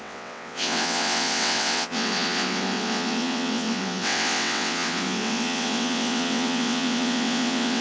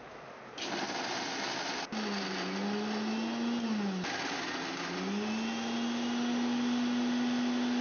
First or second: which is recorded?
second